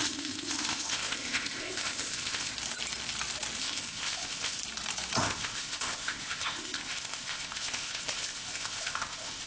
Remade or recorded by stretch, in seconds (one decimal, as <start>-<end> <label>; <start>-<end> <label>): 0.0-2.5 remade; 2.5-3.6 recorded; 3.6-4.6 remade; 4.6-5.2 recorded; 5.2-9.5 remade